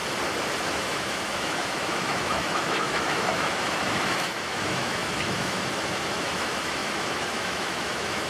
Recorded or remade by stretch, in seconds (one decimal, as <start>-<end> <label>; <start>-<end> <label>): 0.0-0.6 recorded; 0.6-8.3 remade